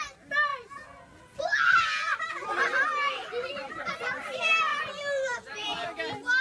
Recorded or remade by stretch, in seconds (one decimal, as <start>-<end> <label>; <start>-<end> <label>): 0.0-6.4 recorded